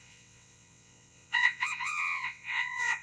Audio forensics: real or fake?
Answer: fake